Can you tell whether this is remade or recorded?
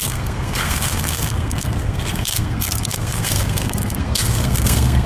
remade